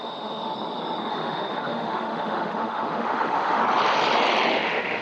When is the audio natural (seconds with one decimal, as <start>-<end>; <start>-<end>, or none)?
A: 0.5-1.1; 3.6-4.5